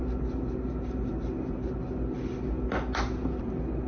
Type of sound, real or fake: real